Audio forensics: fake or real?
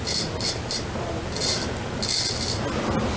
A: real